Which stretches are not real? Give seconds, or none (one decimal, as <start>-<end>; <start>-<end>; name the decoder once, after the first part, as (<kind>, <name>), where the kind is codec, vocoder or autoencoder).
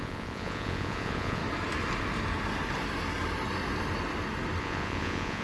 0.0-1.4 (vocoder, Vocos); 4.6-5.4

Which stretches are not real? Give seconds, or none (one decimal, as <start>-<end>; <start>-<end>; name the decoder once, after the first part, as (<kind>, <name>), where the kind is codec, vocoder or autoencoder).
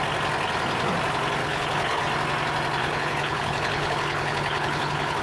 1.4-2.0 (codec, HILCodec); 2.8-5.2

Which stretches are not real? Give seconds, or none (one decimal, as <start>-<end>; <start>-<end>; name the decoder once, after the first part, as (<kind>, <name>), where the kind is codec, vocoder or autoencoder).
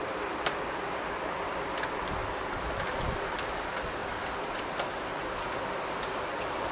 2.2-2.7 (vocoder, BigVGAN v2)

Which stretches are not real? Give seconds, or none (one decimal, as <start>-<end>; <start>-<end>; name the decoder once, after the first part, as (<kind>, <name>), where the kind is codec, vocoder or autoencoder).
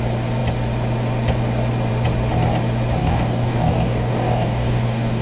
3.0-5.2 (codec, DAC)